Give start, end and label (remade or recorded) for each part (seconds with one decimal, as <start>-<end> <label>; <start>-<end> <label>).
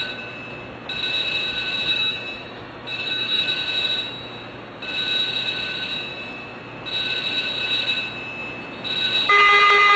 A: 0.0-1.9 recorded; 1.9-3.4 remade; 3.4-6.1 recorded; 6.1-6.6 remade; 6.6-10.0 recorded